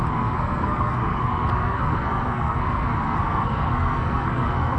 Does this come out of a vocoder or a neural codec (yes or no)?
yes